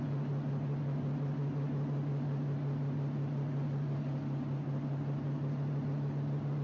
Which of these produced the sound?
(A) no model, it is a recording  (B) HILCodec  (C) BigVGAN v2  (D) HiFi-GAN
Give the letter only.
A